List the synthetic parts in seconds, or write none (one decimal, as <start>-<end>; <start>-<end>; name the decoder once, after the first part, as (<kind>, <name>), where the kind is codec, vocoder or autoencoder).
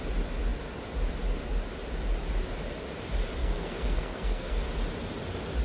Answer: 3.4-4.6 (codec, SNAC)